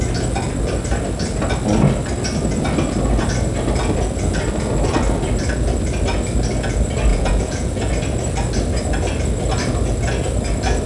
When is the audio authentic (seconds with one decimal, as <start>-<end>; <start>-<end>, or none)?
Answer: 0.0-7.1; 7.9-10.9